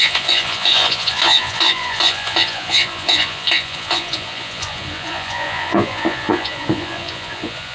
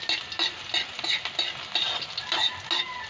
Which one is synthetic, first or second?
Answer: first